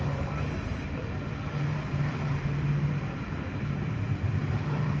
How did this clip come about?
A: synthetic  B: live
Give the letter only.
A